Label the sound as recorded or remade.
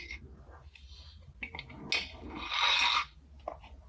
recorded